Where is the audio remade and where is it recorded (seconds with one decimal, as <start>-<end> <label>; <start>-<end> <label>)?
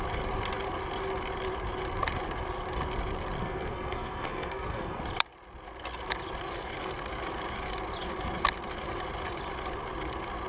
0.0-3.4 recorded; 3.4-5.0 remade; 5.0-10.5 recorded